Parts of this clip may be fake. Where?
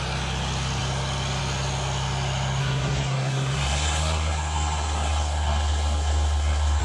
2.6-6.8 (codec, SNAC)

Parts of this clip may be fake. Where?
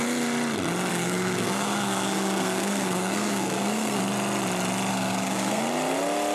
0.9-4.0 (codec, SNAC); 4.9-5.6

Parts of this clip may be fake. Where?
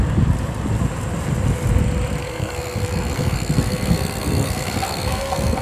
2.2-5.6 (codec, SNAC)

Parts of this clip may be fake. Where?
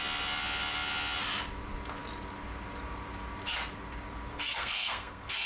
4.3-5.5 (codec, SNAC)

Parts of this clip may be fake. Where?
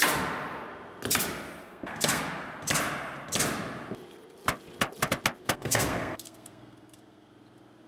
1.6-2.2 (codec, SNAC); 5.4-7.3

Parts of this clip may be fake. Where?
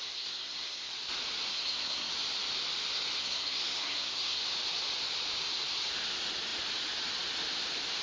0.0-0.9 (codec, SNAC); 1.5-2.1; 3.2-4.4